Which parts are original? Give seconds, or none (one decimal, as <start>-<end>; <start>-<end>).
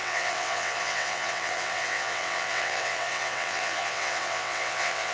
none